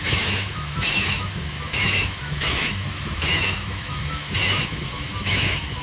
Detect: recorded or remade remade